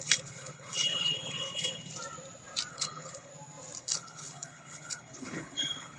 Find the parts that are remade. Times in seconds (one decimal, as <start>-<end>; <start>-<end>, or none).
0.0-1.9; 2.7-3.3; 3.8-6.0